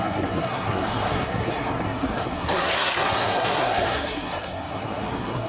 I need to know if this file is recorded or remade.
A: remade